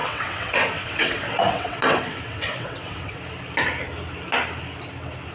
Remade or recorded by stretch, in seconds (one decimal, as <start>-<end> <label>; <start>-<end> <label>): 0.0-3.2 remade; 3.2-5.3 recorded